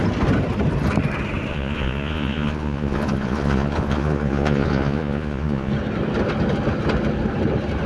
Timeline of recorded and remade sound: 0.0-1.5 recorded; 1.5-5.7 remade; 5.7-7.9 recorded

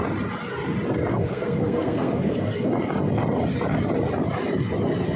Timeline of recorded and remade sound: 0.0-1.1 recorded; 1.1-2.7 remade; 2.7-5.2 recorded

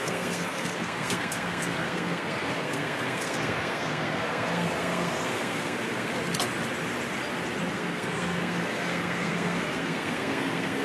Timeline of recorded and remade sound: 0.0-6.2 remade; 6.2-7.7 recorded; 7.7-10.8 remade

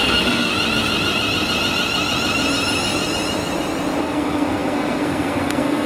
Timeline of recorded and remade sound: 0.0-0.5 remade; 0.5-4.0 recorded; 4.0-5.9 remade

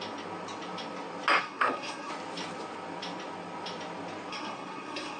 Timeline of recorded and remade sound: 0.0-1.4 recorded; 1.4-2.1 remade; 2.1-4.3 recorded; 4.3-5.2 remade